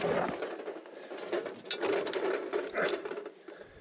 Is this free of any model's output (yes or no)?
yes